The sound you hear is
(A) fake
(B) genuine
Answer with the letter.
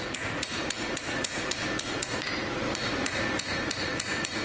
A